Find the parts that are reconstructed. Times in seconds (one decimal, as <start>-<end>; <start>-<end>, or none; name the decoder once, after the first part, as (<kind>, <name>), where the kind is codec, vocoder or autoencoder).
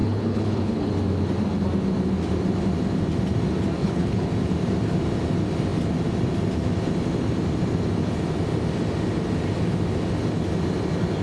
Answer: 0.0-0.9 (codec, HILCodec); 3.8-4.3